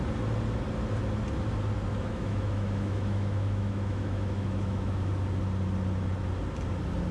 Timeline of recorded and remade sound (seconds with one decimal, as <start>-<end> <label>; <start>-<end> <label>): 0.0-1.9 recorded; 1.9-5.1 remade; 5.1-7.1 recorded